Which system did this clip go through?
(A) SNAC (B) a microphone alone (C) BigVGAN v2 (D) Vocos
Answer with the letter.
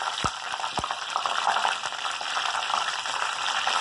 C